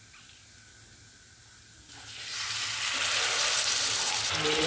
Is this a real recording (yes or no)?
yes